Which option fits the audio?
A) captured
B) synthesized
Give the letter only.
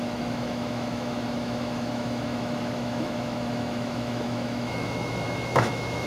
B